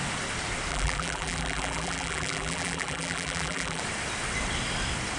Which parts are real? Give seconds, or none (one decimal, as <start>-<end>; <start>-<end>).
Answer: 0.0-0.7; 3.8-5.2